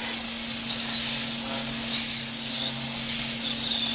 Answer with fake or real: real